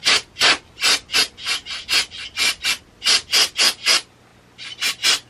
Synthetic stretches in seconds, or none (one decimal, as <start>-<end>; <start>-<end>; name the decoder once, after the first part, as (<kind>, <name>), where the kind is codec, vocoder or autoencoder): none